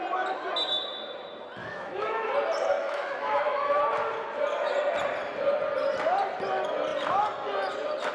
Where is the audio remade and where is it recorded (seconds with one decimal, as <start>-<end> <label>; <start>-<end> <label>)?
0.0-1.6 recorded; 1.6-2.3 remade; 2.3-2.8 recorded; 2.8-3.8 remade; 3.8-8.1 recorded